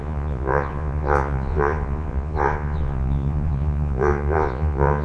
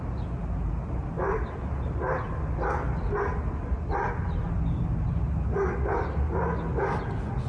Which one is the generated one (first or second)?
first